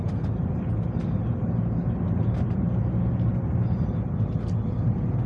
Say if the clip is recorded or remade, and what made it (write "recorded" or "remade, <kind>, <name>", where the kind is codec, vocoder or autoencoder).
recorded